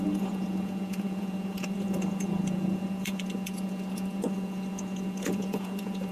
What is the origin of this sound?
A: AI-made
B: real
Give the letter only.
A